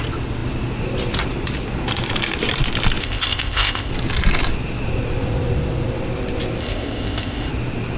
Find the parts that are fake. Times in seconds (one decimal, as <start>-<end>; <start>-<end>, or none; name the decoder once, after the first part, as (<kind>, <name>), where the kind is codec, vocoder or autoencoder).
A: 3.0-3.9 (codec, ZipCodec); 6.6-7.5